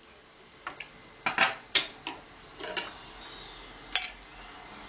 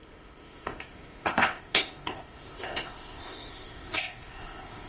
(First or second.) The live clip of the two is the first